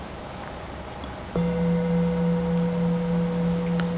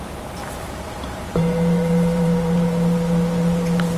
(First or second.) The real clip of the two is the first